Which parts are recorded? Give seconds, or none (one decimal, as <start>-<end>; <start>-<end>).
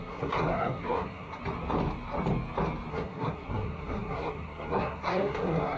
1.4-2.9